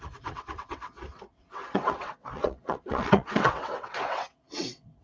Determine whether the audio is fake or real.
fake